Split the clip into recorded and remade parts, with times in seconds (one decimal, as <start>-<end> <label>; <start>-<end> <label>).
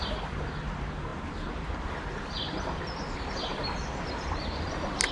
0.0-1.1 remade; 1.1-3.2 recorded; 3.2-3.6 remade; 3.6-4.3 recorded; 4.3-5.1 remade